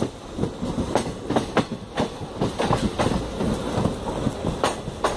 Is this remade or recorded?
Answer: recorded